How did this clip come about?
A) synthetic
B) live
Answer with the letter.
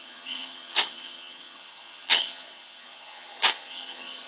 A